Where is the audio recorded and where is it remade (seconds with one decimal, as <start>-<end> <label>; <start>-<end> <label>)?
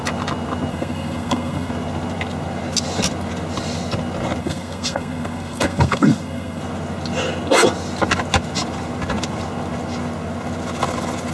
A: 0.0-0.7 recorded; 0.7-1.7 remade; 1.7-4.4 recorded; 4.4-6.6 remade; 6.6-11.3 recorded